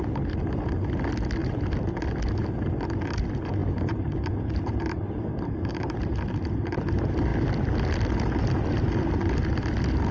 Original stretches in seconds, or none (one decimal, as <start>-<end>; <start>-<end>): 0.0-1.4; 1.9-3.6; 6.0-10.1

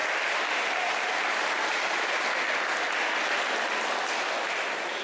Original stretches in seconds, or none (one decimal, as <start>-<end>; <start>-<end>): 0.0-5.0

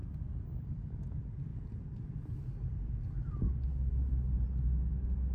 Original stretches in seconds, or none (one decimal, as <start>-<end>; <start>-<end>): 0.0-1.5; 3.0-5.3

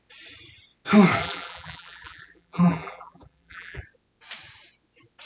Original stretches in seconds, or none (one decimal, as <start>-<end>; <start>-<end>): 0.0-1.2; 3.8-5.3

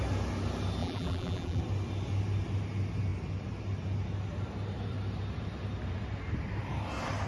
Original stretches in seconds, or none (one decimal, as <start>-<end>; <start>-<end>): 0.0-0.8; 1.6-7.3

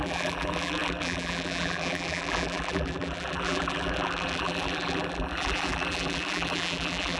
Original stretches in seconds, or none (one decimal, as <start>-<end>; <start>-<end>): none

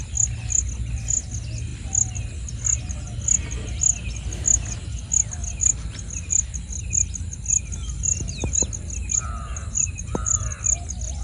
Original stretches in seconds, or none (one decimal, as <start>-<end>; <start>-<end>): 0.0-5.4; 6.5-9.5; 10.4-11.2